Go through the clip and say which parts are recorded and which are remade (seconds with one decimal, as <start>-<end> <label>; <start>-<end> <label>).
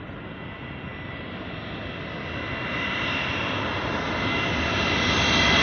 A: 0.0-5.6 recorded